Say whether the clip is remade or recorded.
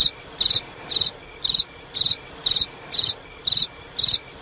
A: recorded